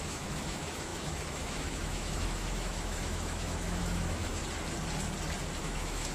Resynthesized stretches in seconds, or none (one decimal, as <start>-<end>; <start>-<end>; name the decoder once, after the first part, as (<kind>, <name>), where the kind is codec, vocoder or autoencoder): 0.0-4.4 (autoencoder, DAC-VAE); 5.6-6.1